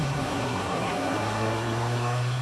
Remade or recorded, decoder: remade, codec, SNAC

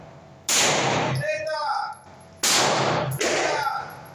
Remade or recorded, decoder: recorded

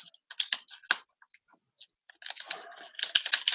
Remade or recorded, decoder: recorded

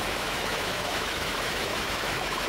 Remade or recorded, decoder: remade, autoencoder, DAC-VAE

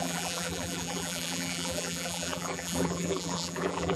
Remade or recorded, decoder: remade, vocoder, BigVGAN v2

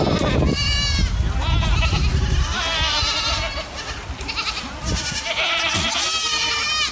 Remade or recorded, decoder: recorded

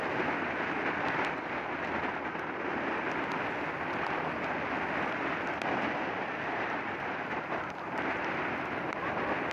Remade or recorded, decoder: recorded